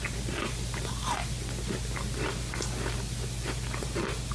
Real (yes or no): yes